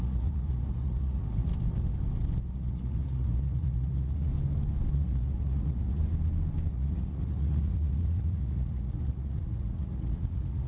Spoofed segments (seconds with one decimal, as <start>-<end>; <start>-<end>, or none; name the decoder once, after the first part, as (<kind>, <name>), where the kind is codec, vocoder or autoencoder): 0.0-1.5 (vocoder, Vocos); 2.5-4.3; 4.9-6.0; 6.7-10.7